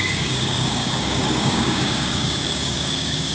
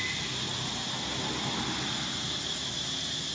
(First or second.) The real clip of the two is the second